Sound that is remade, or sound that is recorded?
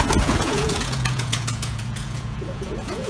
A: remade